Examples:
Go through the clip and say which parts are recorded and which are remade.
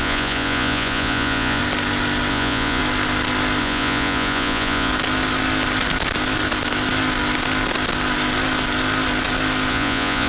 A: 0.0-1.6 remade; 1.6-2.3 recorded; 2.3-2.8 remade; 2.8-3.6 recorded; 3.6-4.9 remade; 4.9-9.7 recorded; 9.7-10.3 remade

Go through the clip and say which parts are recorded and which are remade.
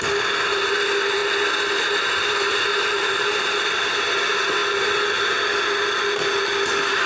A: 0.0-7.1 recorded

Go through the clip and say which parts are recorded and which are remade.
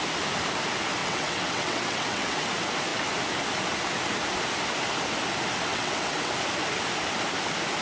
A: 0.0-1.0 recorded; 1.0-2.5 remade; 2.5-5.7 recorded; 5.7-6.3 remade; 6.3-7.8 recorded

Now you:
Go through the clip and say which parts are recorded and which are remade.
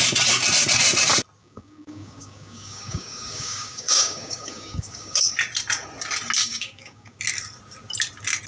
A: 0.0-1.4 recorded; 1.4-5.3 remade; 5.3-6.4 recorded; 6.4-7.2 remade; 7.2-8.5 recorded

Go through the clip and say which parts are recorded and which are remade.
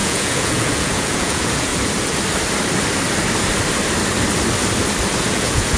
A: 0.0-1.7 remade; 1.7-5.2 recorded; 5.2-5.8 remade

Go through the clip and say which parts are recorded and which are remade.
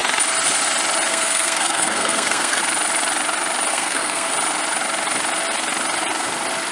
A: 0.0-1.1 recorded; 1.1-2.6 remade; 2.6-3.7 recorded; 3.7-4.3 remade; 4.3-6.7 recorded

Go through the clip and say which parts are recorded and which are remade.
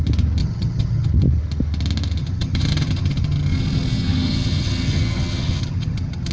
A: 0.0-0.4 recorded; 0.4-1.1 remade; 1.1-2.2 recorded; 2.2-6.3 remade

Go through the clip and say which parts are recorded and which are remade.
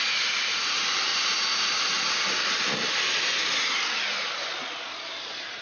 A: 0.0-5.6 recorded